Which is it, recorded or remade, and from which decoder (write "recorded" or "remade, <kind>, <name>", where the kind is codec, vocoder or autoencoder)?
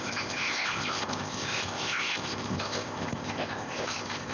remade, codec, ZipCodec